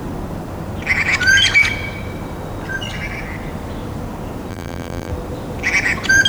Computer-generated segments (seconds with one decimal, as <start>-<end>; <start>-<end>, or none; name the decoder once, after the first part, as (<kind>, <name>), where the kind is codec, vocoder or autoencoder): 4.5-5.1 (vocoder, BigVGAN v2)